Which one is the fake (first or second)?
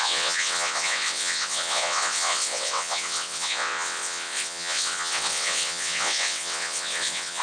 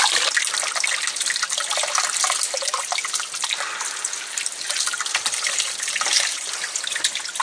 first